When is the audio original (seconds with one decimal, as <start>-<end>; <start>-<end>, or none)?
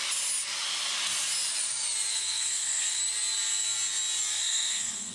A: 0.0-2.1; 3.0-4.3